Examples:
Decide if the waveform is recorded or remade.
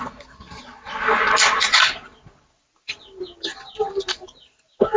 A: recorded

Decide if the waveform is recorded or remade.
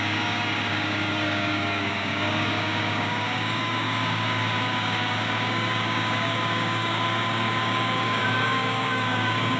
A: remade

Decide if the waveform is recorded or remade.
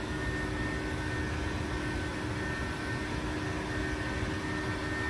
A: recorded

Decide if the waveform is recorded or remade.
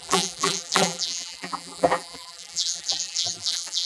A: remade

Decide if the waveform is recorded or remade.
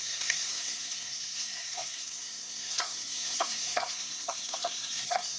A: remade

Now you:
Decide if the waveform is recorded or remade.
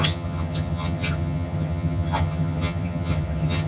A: remade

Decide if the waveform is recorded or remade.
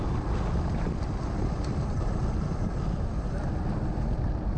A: recorded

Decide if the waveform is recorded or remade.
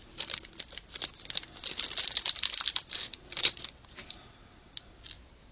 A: recorded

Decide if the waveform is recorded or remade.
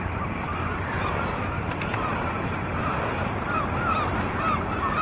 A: remade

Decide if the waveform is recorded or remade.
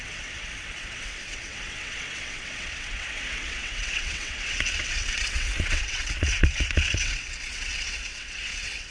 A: remade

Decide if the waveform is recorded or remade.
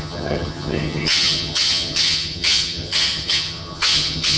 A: remade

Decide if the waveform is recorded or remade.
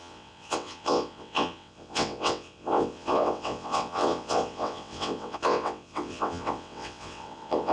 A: remade